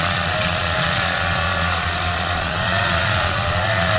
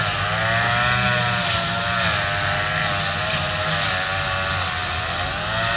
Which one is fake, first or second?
first